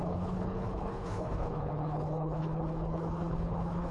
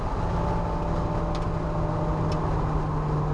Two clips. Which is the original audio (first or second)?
second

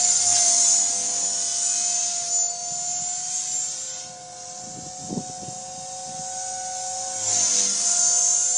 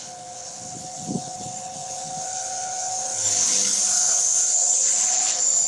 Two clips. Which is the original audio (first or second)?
first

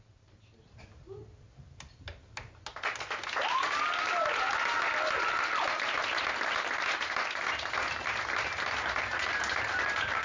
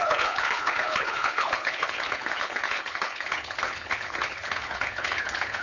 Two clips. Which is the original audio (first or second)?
first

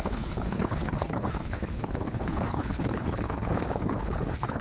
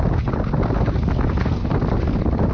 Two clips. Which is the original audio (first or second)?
second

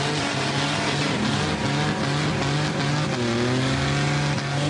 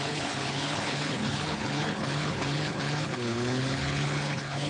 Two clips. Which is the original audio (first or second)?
first